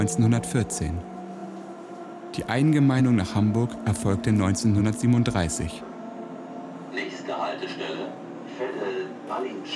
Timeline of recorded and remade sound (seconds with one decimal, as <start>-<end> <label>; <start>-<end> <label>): 0.0-9.8 recorded